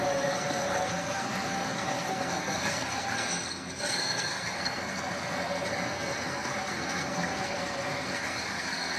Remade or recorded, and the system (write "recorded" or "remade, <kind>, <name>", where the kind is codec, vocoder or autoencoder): remade, codec, SNAC